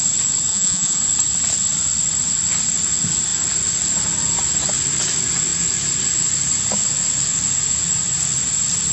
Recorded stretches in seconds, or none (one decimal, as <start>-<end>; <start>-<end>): 0.0-0.5; 1.0-8.9